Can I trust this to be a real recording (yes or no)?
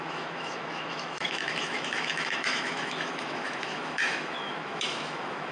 no